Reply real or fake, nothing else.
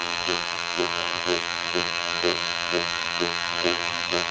fake